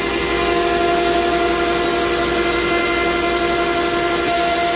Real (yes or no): yes